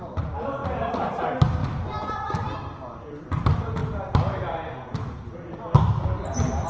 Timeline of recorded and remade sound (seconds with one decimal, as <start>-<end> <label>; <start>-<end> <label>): 0.0-6.7 recorded

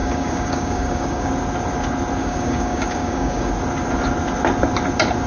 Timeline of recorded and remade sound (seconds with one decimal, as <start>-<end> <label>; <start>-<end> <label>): 0.0-1.3 remade; 1.3-2.2 recorded; 2.2-3.5 remade; 3.5-5.3 recorded